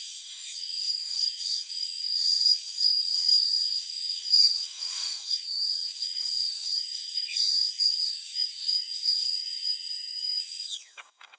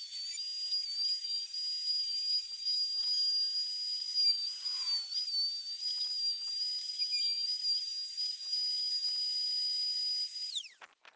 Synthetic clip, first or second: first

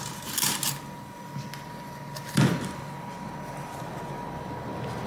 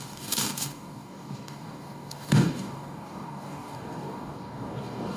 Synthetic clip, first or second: second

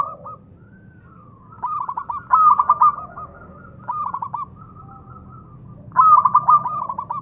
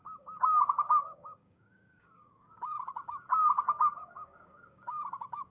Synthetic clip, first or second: second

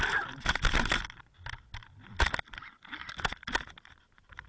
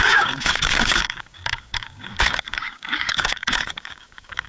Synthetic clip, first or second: second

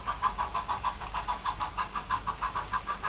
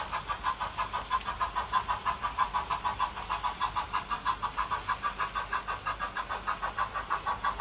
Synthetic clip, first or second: first